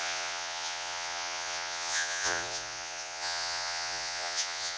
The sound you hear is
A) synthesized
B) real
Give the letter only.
A